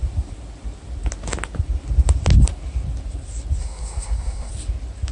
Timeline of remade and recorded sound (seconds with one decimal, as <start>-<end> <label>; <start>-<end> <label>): 0.0-3.6 recorded; 3.6-4.5 remade; 4.5-5.1 recorded